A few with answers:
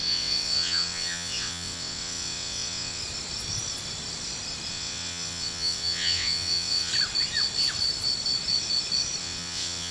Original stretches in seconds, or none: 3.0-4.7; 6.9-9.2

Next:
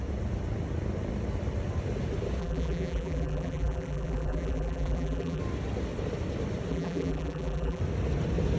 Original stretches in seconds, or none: 0.0-2.4; 5.4-6.7; 7.8-8.6